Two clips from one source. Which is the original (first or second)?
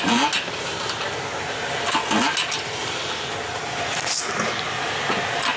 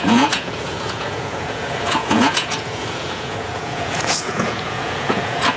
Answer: first